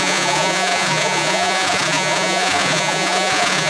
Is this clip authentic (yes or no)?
no